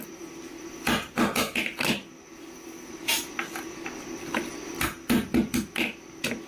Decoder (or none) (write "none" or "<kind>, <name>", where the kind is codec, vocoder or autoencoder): vocoder, BigVGAN v2